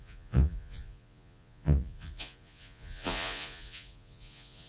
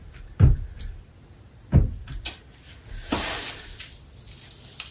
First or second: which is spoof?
first